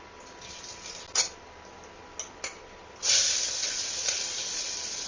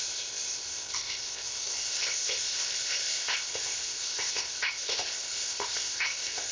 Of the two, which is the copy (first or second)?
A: second